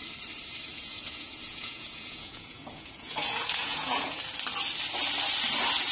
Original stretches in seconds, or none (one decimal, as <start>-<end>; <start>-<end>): 0.0-0.7; 4.2-5.9